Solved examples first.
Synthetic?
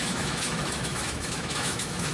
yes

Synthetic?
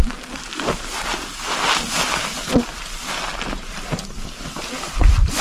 no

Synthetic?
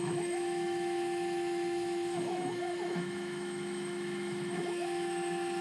yes